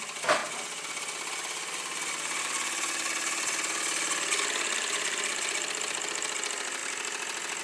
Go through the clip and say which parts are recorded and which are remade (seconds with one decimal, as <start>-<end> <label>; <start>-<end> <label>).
0.0-7.6 recorded